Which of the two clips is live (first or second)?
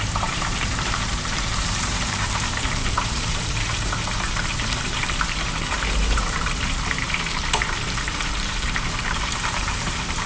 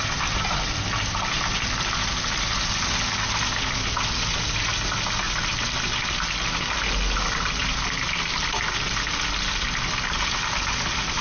second